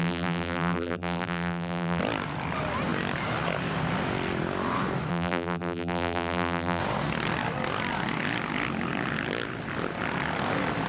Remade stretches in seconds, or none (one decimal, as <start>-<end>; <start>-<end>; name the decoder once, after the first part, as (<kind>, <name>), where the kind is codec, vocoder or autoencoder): 0.0-2.0 (vocoder, BigVGAN v2); 5.1-6.8